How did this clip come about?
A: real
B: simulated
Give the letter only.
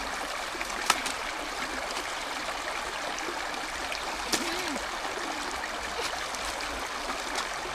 A